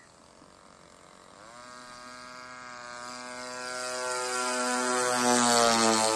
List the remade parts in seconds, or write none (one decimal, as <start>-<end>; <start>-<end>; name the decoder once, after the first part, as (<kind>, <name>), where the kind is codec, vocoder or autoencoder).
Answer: none